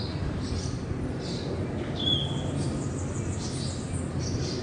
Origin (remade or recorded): recorded